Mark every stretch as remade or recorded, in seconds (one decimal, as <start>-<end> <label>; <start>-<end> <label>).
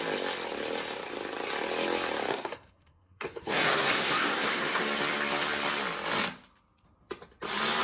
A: 0.0-2.3 recorded; 2.3-4.8 remade; 4.8-7.8 recorded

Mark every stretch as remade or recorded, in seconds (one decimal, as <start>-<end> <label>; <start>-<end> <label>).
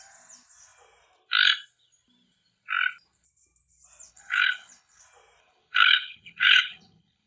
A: 0.0-4.1 recorded; 4.1-5.0 remade; 5.0-5.4 recorded; 5.4-7.3 remade